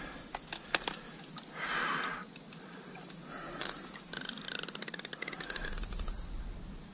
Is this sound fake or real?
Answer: real